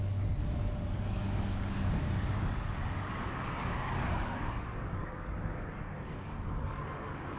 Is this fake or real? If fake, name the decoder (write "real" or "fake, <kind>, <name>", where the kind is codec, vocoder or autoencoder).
fake, codec, DAC